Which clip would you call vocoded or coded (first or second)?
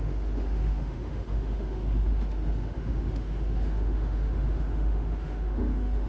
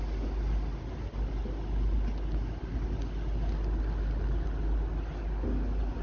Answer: first